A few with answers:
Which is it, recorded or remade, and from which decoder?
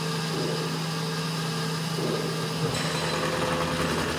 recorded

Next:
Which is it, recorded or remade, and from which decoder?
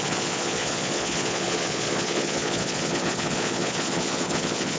remade, vocoder, Vocos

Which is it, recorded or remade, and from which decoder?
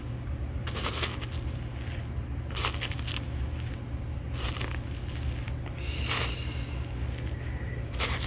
recorded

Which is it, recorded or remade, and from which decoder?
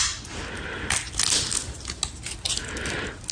recorded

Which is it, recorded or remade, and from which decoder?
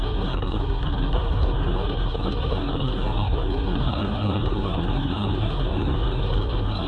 remade, codec, SNAC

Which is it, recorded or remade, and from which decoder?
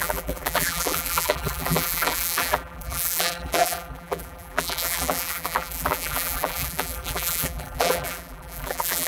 remade, vocoder, BigVGAN v2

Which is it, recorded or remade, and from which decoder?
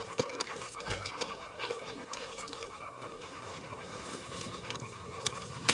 remade, codec, SNAC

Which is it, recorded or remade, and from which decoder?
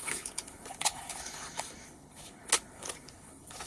remade, codec, HILCodec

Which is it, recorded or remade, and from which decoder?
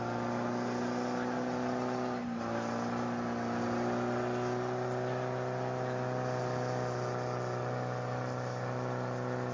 recorded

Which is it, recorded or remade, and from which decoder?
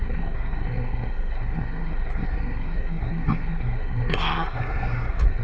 remade, codec, SNAC